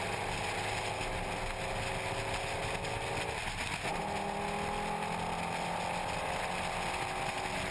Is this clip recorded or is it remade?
recorded